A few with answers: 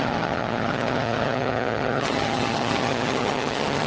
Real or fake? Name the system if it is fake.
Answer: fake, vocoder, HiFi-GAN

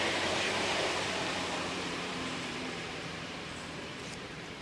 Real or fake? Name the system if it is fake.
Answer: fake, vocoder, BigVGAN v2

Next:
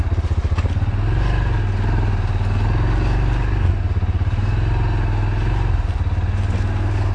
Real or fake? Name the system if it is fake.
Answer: real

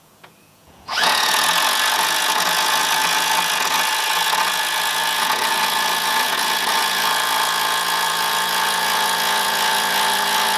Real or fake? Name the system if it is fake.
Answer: fake, vocoder, Vocos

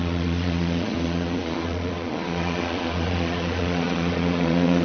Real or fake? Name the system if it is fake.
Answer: fake, vocoder, Vocos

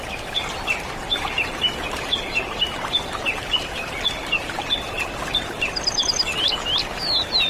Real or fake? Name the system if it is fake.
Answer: real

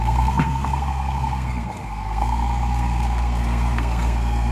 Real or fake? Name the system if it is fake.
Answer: fake, codec, SNAC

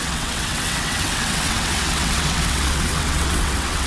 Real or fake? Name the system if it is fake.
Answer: fake, vocoder, WaveNeXt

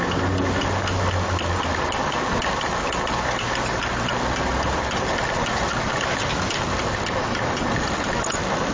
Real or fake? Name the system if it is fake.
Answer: real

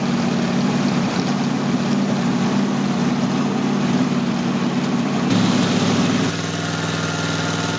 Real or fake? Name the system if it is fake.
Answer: real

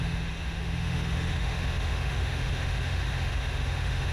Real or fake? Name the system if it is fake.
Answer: fake, autoencoder, DAC-VAE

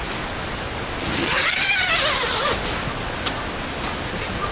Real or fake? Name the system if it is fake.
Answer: real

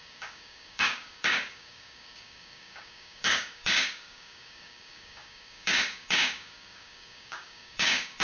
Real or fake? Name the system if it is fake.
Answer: fake, codec, DAC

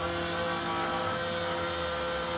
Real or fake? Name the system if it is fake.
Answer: real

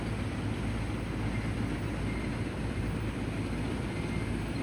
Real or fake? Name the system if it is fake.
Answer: real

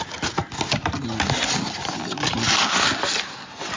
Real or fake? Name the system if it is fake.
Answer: real